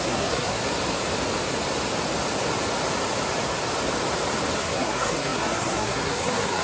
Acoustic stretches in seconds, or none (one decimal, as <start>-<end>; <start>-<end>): 0.6-4.6